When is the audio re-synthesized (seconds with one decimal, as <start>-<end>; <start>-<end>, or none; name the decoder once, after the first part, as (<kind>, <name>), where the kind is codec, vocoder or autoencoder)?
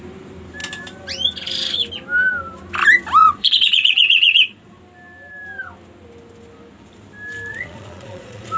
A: 3.2-4.8 (vocoder, Vocos); 7.5-8.6